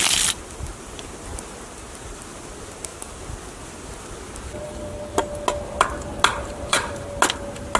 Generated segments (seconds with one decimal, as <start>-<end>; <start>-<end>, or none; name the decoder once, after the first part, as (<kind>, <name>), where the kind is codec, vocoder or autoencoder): 6.3-6.9 (vocoder, BigVGAN v2)